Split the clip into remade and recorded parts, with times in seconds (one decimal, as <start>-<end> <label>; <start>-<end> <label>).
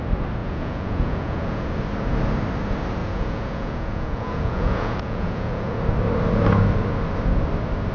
0.0-0.4 recorded; 0.4-1.8 remade; 1.8-3.0 recorded; 3.0-5.8 remade; 5.8-7.9 recorded